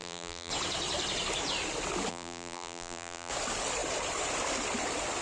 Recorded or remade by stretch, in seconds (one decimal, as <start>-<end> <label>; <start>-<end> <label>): 0.0-0.5 remade; 0.5-2.1 recorded; 2.1-3.3 remade; 3.3-5.2 recorded